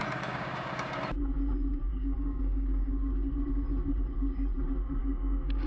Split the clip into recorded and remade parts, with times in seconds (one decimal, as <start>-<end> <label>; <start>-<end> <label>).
0.0-1.0 remade; 1.0-1.9 recorded; 1.9-2.9 remade; 2.9-5.0 recorded; 5.0-5.7 remade